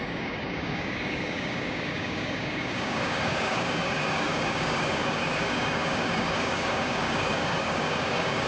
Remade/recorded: remade